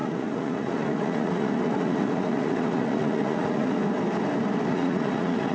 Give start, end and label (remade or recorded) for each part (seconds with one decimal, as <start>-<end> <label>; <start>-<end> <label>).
0.0-3.8 remade; 3.8-4.7 recorded; 4.7-5.5 remade